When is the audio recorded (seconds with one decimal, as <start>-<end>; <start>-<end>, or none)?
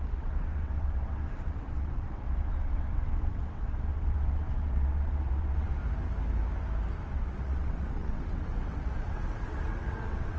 5.8-7.1